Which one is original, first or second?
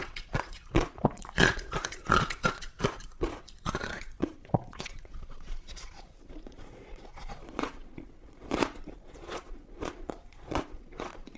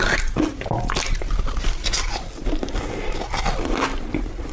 second